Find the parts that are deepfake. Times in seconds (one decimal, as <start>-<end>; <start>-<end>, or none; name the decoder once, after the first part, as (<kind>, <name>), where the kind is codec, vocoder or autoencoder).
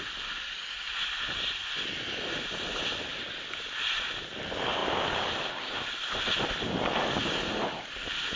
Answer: none